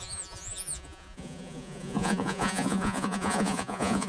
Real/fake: fake